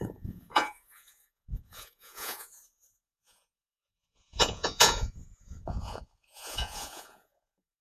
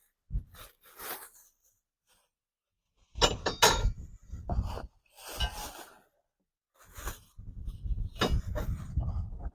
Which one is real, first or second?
second